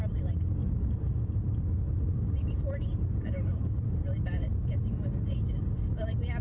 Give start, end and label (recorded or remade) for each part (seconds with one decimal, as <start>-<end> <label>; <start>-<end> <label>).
0.0-0.6 recorded; 0.6-4.4 remade; 4.4-6.4 recorded